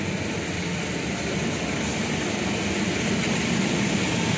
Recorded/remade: recorded